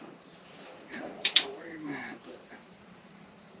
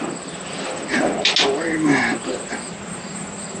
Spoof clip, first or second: first